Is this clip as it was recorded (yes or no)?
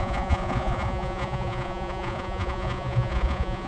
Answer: no